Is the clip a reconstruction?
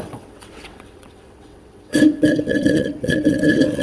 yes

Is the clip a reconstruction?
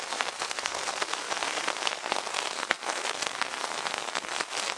yes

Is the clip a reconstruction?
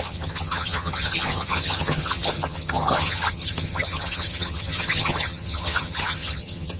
yes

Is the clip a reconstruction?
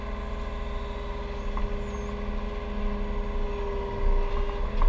no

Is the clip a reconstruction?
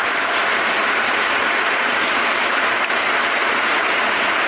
no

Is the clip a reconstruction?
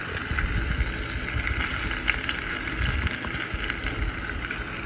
no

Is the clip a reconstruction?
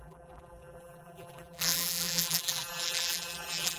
yes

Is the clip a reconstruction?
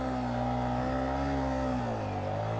no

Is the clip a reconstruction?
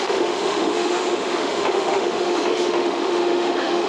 yes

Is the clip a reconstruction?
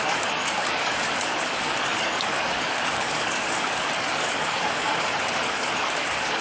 yes